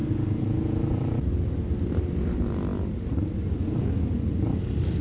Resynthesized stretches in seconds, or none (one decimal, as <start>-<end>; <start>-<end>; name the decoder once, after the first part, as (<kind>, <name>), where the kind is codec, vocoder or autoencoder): none